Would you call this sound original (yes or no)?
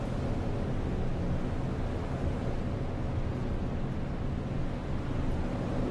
yes